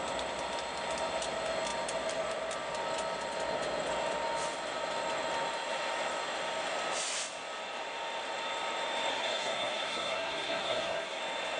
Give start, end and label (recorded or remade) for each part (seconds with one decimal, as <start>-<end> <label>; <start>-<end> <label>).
0.0-9.1 recorded; 9.1-11.2 remade; 11.2-11.6 recorded